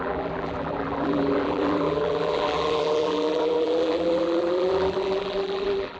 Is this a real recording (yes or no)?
no